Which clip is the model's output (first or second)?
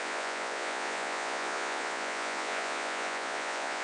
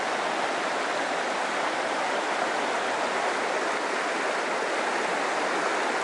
first